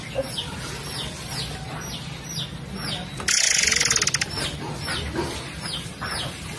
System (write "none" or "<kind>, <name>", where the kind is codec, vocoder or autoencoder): none